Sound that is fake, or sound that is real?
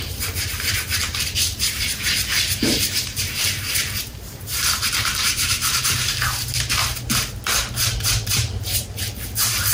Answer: fake